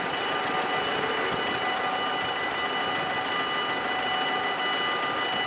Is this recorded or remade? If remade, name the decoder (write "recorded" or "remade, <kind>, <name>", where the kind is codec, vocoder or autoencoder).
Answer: recorded